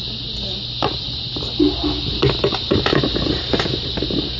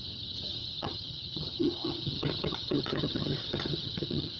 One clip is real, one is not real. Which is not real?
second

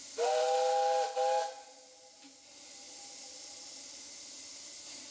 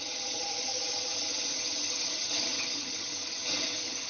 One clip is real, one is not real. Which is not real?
second